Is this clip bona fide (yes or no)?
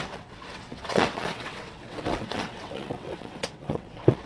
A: no